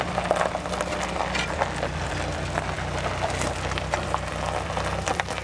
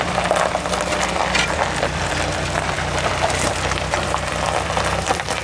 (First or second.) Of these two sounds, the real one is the first